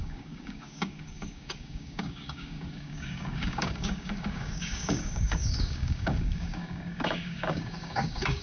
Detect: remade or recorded remade